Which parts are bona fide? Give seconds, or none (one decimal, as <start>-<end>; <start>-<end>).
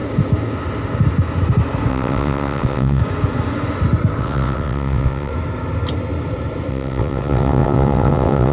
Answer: 0.0-1.9; 3.0-4.2; 5.3-6.7